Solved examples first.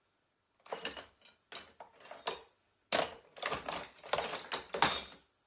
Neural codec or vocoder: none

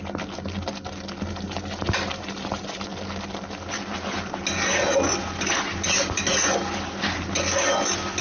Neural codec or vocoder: none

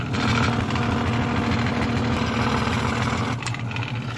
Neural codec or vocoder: none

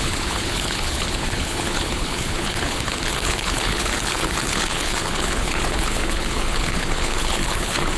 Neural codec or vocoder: codec, HILCodec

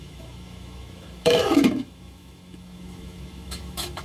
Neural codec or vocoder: autoencoder, DAC-VAE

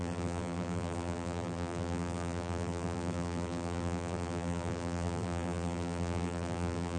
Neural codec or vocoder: vocoder, BigVGAN v2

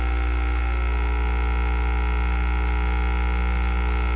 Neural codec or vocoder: none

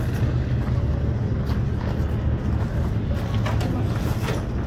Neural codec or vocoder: none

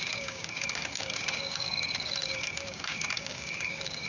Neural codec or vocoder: codec, DAC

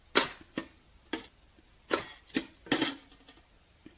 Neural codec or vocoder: none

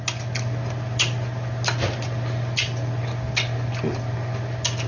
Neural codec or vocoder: none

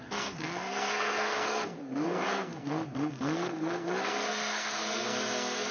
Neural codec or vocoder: codec, SNAC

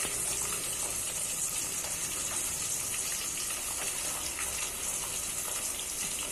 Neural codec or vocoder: none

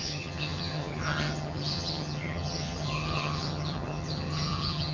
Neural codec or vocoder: vocoder, HiFi-GAN